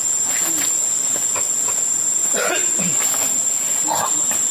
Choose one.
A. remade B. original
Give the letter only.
B